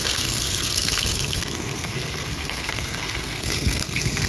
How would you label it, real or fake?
fake